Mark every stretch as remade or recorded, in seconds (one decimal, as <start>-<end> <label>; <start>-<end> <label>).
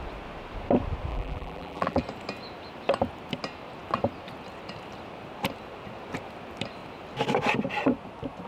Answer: 0.0-1.1 recorded; 1.1-2.0 remade; 2.0-8.5 recorded